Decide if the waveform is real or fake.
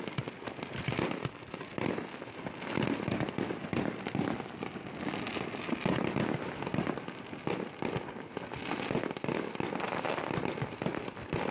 real